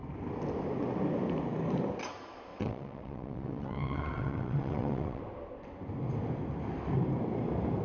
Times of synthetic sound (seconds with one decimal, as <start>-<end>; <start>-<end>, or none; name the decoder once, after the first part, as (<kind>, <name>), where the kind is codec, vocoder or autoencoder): 2.5-5.2 (vocoder, WaveNeXt)